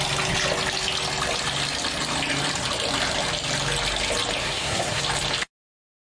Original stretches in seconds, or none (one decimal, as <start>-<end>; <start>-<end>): 0.0-4.4; 5.0-6.0